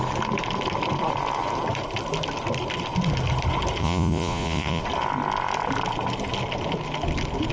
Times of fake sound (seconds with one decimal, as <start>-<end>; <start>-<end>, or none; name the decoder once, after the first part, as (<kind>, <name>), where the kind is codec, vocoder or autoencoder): 3.8-4.8 (vocoder, Vocos)